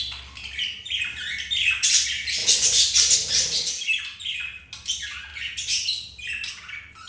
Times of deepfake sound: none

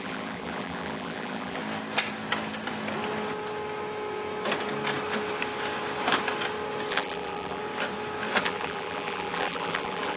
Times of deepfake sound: 0.0-1.6 (vocoder, BigVGAN v2); 6.9-7.6; 8.4-10.2